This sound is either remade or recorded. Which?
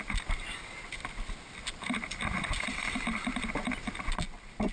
recorded